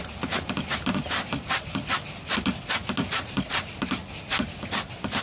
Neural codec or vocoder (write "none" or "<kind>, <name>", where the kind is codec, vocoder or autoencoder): none